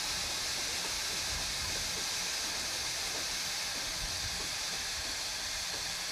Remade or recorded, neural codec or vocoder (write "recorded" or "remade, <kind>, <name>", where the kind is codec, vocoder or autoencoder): recorded